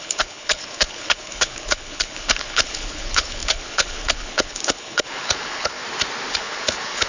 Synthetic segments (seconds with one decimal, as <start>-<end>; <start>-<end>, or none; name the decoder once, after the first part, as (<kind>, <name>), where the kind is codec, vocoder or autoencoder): 0.0-5.8 (codec, HILCodec); 6.3-7.1